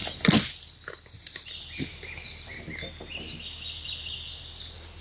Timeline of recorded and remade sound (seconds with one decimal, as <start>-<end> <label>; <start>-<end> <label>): 0.0-5.0 recorded